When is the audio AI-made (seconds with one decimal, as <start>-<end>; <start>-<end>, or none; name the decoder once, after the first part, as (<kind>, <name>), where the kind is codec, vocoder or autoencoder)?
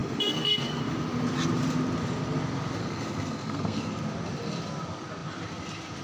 0.0-0.8 (codec, SNAC); 2.8-3.9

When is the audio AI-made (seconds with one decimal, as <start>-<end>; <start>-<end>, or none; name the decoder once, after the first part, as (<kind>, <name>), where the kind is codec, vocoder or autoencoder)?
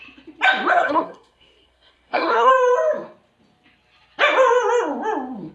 0.7-2.5 (codec, SNAC)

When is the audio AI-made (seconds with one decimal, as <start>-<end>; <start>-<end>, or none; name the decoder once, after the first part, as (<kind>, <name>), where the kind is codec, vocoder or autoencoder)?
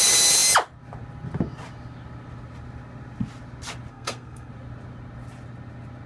3.9-4.5 (codec, SNAC)